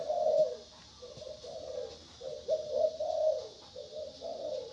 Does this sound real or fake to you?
real